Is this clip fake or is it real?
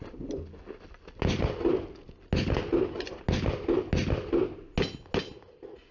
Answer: real